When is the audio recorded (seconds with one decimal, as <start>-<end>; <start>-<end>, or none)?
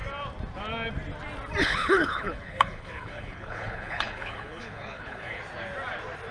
0.0-1.6; 5.4-6.3